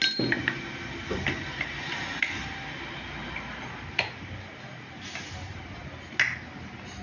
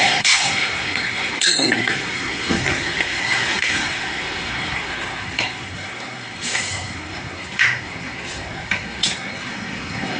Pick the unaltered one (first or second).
first